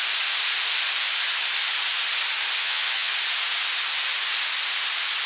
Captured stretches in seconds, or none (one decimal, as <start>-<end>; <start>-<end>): 0.0-2.6; 3.1-5.3